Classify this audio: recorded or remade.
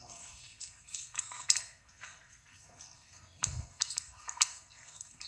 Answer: remade